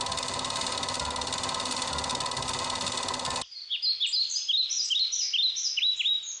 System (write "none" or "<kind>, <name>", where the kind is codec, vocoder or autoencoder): none